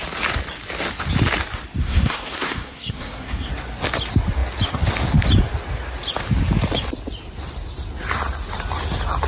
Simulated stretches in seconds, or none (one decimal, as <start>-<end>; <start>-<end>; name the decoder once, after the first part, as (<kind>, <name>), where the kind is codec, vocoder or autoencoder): 1.8-3.5 (codec, SNAC)